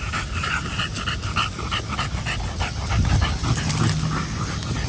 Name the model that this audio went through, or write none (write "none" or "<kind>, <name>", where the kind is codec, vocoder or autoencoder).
none